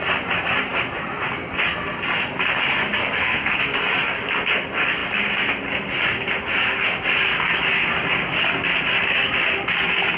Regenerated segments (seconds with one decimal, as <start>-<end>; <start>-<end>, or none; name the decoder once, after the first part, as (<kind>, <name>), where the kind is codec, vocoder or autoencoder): 3.0-3.6 (codec, SNAC)